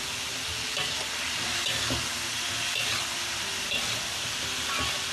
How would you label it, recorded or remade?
recorded